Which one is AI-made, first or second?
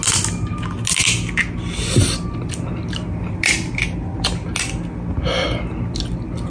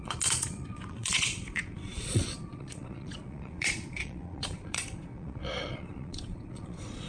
second